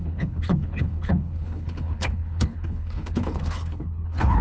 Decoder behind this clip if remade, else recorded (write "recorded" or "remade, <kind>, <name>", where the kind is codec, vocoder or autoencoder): remade, codec, HILCodec